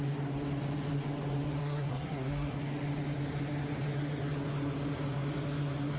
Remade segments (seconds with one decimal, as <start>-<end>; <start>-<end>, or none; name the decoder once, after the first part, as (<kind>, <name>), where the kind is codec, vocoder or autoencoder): 1.6-2.6 (codec, SNAC)